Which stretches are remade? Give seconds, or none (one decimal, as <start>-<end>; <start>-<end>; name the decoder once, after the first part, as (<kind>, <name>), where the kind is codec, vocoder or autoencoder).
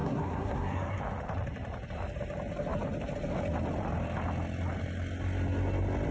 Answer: 0.0-1.0 (codec, SNAC)